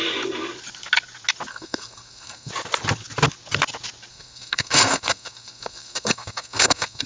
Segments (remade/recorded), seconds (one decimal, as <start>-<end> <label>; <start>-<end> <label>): 0.0-1.5 recorded; 1.5-2.5 remade; 2.5-4.1 recorded; 4.1-7.1 remade